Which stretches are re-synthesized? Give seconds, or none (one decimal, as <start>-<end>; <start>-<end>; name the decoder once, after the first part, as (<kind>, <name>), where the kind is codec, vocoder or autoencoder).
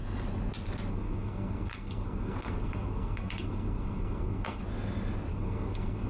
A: 0.9-4.6 (codec, SNAC); 5.3-6.1